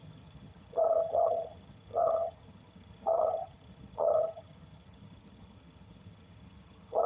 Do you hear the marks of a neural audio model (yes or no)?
yes